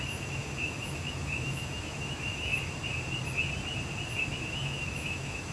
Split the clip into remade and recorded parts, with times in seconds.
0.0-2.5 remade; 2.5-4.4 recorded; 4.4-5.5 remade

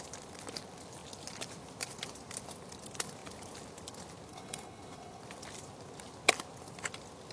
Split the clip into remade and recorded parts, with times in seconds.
0.0-4.3 recorded; 4.3-5.2 remade; 5.2-7.3 recorded

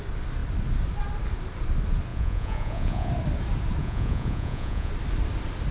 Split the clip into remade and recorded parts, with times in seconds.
0.0-2.1 recorded; 2.1-3.1 remade; 3.1-3.8 recorded; 3.8-4.9 remade; 4.9-5.7 recorded